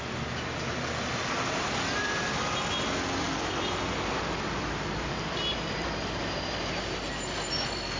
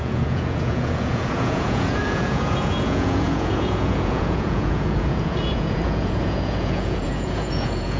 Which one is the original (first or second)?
first